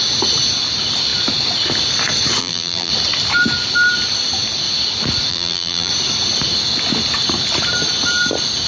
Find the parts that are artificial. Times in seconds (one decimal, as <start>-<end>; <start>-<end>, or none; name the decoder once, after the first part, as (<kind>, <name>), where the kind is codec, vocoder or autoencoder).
2.4-2.9 (vocoder, BigVGAN v2); 5.3-5.9

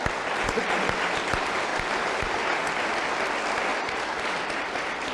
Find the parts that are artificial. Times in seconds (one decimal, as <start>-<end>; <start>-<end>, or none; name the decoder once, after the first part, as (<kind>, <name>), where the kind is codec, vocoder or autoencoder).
1.7-2.4 (vocoder, BigVGAN v2); 3.7-5.1